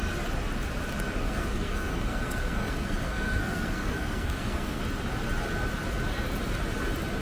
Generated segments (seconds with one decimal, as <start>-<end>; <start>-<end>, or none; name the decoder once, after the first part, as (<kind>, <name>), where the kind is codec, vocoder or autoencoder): 1.2-4.8 (codec, SNAC)